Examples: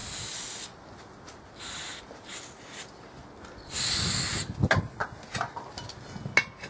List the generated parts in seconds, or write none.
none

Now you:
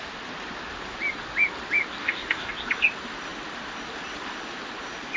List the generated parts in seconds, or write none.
2.0-2.5 (codec, DAC)